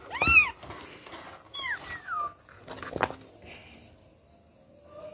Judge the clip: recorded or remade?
recorded